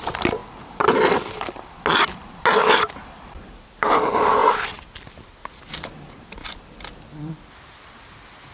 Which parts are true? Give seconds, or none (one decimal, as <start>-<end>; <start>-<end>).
0.0-8.5